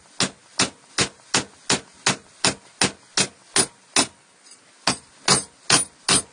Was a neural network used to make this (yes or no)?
no